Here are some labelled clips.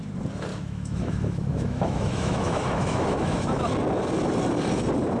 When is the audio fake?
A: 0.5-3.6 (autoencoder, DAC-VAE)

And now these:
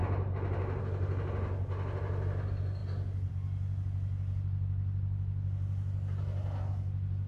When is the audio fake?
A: none

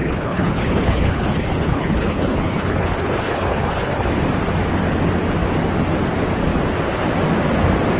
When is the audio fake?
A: 0.0-4.1 (codec, HILCodec)

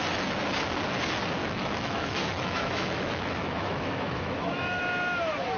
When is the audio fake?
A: 1.4-4.8 (autoencoder, DAC-VAE)

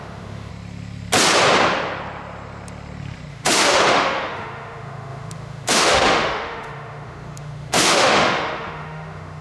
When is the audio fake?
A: 0.0-0.5 (autoencoder, DAC-VAE); 3.3-9.4

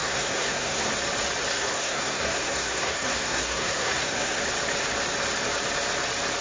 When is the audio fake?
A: 0.0-0.9 (codec, SNAC); 1.5-4.4